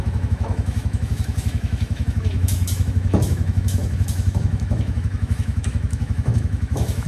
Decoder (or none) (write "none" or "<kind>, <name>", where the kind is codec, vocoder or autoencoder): autoencoder, DAC-VAE